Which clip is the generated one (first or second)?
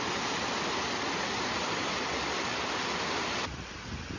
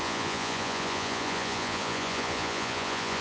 second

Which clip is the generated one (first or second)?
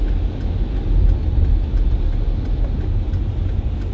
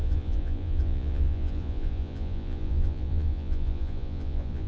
second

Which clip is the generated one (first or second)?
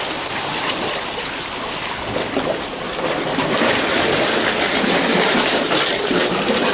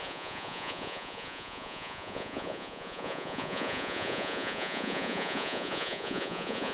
second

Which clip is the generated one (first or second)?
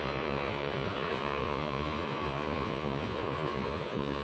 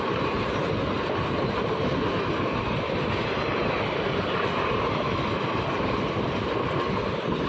first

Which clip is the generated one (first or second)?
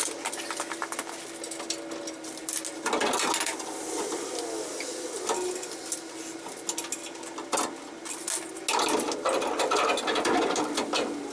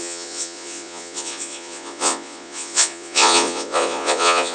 second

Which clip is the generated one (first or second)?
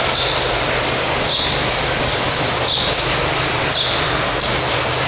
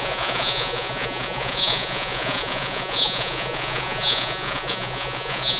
second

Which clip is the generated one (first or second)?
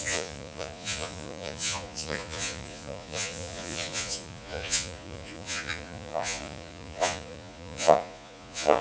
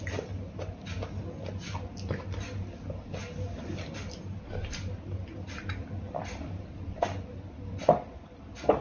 first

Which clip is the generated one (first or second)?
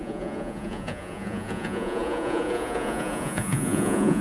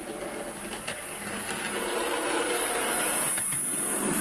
first